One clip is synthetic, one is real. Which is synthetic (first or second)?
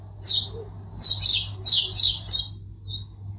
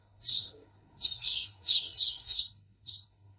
second